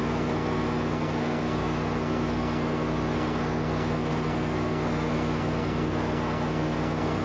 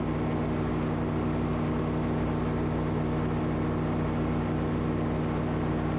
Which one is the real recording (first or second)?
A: second